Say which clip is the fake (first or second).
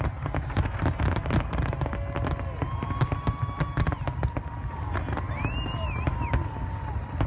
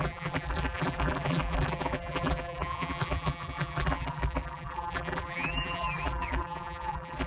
second